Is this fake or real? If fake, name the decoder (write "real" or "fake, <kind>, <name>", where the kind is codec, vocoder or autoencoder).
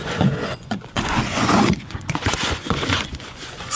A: fake, vocoder, Vocos